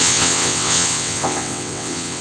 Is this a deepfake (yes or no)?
yes